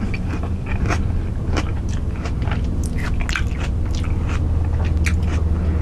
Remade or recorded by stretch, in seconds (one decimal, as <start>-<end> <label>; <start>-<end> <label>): 0.0-5.8 recorded